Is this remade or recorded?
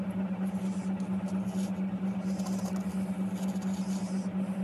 recorded